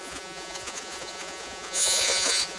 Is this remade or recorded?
remade